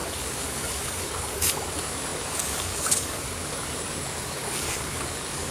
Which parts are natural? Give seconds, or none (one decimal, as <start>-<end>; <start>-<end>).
none